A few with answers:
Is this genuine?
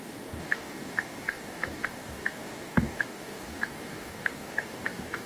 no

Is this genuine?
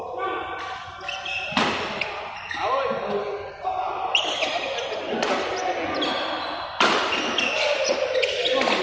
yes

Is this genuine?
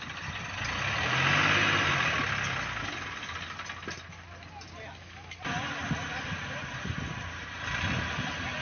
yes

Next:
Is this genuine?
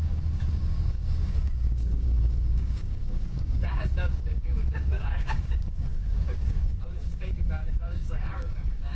no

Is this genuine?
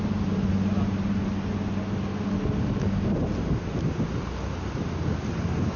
yes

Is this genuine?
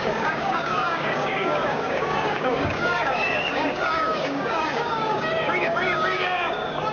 no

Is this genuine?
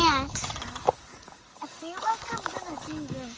no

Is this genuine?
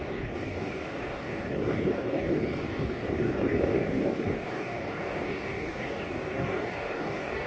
no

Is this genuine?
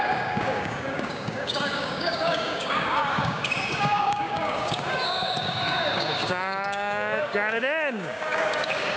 no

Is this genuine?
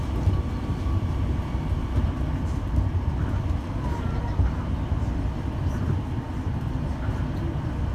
yes